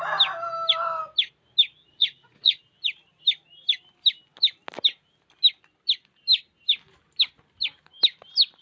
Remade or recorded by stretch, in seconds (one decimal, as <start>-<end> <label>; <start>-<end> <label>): 0.0-1.9 recorded; 1.9-2.6 remade; 2.6-8.6 recorded